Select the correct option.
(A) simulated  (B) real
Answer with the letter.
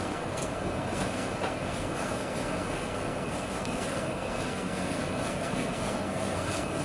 A